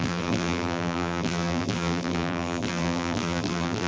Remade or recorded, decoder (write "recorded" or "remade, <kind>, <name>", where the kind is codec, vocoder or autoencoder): remade, vocoder, BigVGAN v2